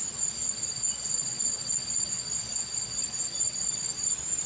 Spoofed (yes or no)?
yes